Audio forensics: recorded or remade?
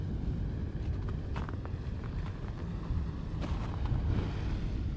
recorded